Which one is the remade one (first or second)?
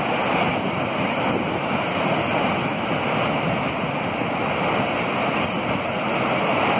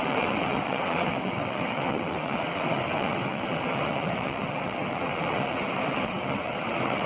second